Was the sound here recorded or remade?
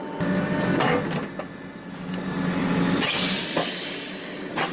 recorded